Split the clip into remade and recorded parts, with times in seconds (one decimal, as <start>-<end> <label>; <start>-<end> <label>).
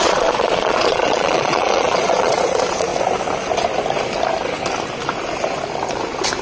0.0-2.9 remade; 2.9-6.4 recorded